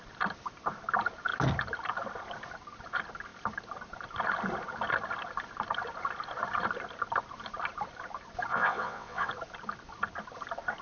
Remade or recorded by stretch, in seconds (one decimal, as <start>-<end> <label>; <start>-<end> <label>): 0.0-8.5 recorded; 8.5-9.3 remade; 9.3-10.8 recorded